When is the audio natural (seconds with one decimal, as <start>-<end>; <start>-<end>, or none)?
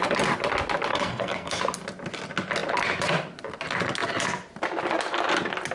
0.0-0.9; 1.6-5.7